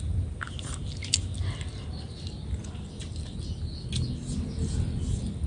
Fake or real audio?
real